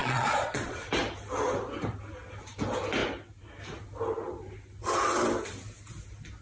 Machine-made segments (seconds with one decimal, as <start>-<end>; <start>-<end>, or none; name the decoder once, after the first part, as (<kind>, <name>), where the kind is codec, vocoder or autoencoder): 0.0-0.9 (vocoder, Vocos)